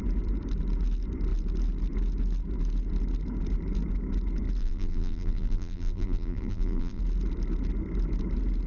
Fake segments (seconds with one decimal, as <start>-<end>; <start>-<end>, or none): 4.6-7.0